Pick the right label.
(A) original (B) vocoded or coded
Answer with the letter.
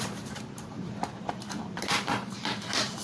B